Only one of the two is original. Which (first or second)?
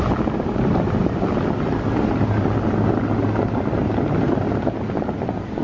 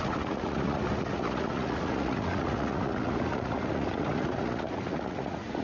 first